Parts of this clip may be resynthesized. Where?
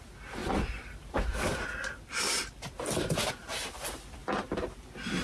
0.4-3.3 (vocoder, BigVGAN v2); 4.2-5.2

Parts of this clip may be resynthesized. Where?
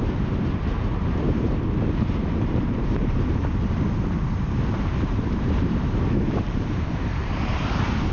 0.0-3.4 (vocoder, BigVGAN v2); 4.7-8.1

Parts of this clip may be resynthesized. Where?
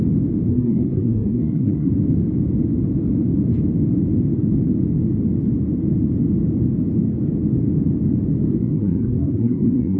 0.5-1.9 (codec, SNAC); 8.5-10.0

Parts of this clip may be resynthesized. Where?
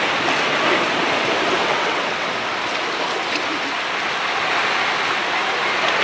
1.6-2.3 (vocoder, WaveNeXt)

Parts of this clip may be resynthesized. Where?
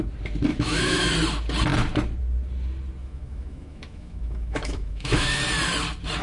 0.5-1.1 (autoencoder, DAC-VAE); 3.0-5.4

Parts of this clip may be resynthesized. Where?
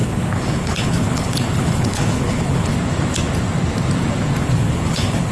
0.0-2.7 (codec, HILCodec); 4.4-5.3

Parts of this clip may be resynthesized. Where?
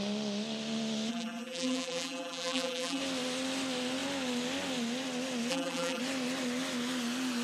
1.1-3.0 (vocoder, BigVGAN v2); 5.5-6.0